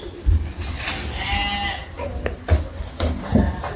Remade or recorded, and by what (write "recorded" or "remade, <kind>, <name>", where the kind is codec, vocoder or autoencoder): recorded